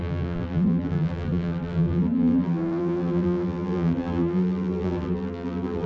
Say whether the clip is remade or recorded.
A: remade